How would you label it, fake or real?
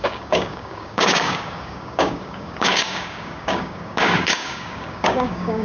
fake